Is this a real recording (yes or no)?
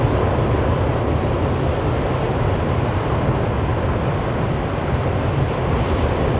yes